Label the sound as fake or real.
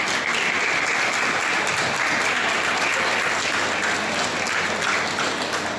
real